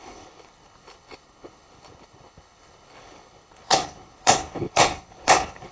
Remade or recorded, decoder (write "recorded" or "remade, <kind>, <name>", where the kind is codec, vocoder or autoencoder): remade, codec, HILCodec